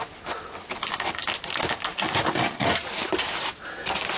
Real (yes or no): yes